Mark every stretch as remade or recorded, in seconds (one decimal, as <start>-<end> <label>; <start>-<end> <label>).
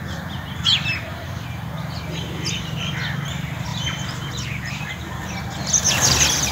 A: 0.0-1.1 recorded; 1.1-2.8 remade; 2.8-3.7 recorded; 3.7-5.0 remade; 5.0-6.5 recorded